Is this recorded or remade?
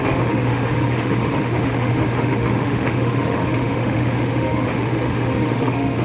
remade